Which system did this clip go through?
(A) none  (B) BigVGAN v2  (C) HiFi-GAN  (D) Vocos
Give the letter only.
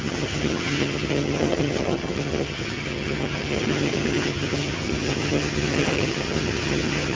C